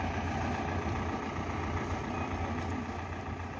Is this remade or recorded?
recorded